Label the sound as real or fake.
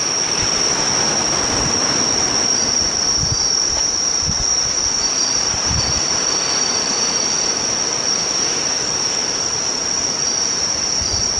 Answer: fake